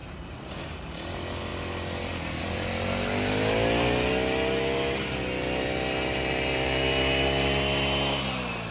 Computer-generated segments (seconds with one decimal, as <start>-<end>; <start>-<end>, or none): 0.0-0.9